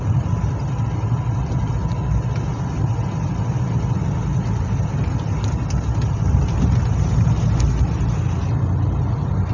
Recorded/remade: recorded